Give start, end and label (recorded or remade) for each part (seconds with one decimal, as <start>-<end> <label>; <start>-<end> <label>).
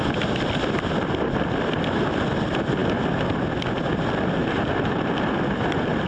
0.0-4.4 recorded; 4.4-5.1 remade; 5.1-6.1 recorded